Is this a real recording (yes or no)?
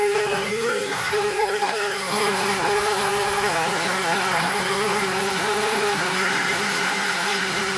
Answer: no